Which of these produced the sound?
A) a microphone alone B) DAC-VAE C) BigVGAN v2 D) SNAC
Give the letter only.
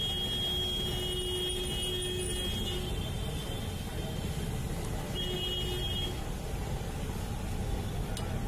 A